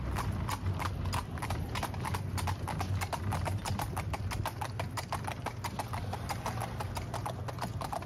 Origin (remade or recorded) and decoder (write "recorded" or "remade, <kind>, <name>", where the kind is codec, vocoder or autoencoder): recorded